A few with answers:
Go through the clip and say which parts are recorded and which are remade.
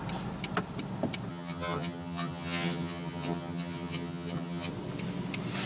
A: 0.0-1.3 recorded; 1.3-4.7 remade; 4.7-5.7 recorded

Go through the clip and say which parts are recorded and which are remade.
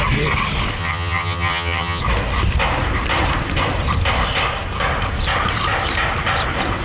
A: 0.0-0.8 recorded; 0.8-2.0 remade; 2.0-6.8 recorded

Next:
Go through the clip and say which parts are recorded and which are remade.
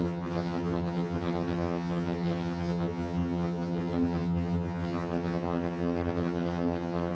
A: 0.0-7.1 remade